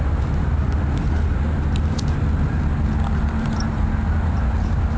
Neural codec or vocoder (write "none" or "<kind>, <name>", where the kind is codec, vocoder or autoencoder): none